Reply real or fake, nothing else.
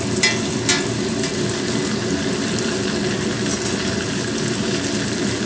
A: real